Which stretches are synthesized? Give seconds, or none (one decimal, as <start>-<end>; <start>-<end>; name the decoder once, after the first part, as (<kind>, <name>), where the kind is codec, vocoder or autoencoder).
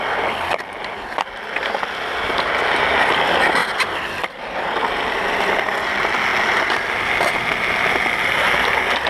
none